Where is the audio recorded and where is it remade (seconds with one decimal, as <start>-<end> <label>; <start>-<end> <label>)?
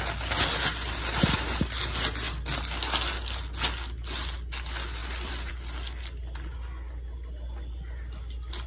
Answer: 0.0-5.0 recorded; 5.0-5.5 remade; 5.5-8.7 recorded